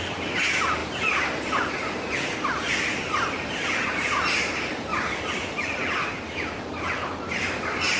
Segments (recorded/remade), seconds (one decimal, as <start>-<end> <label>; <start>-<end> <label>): 0.0-8.0 recorded